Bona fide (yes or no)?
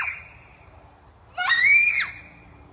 no